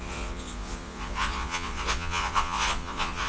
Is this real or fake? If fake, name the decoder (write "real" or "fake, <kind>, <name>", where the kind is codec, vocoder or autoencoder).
fake, vocoder, Vocos